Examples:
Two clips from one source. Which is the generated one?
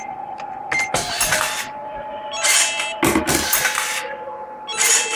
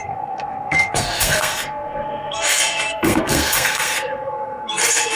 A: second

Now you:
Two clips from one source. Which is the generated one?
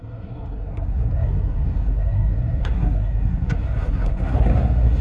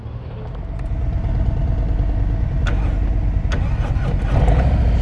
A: first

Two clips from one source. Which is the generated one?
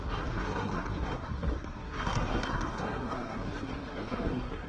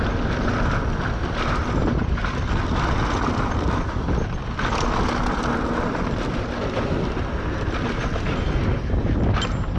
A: first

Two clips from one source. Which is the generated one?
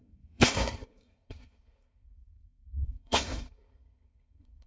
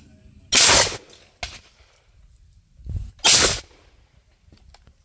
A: first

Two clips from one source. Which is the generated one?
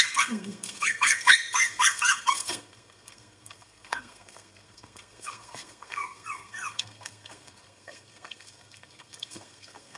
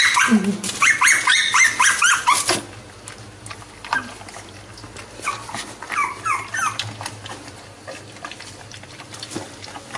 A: first